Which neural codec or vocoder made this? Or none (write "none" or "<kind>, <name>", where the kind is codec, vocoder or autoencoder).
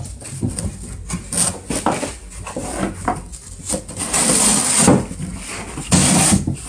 none